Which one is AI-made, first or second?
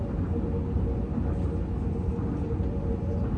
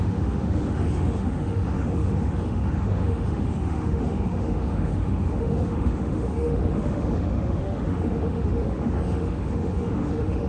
second